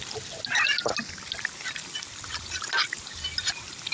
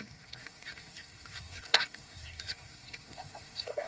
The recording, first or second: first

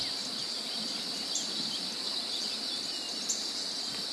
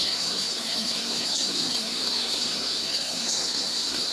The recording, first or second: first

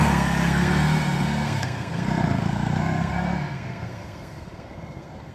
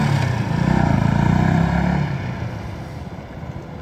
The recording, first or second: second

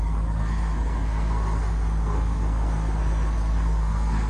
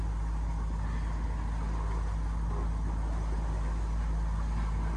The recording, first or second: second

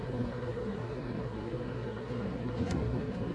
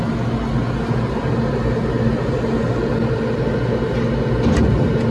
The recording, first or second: second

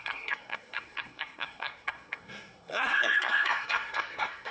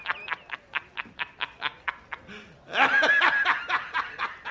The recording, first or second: second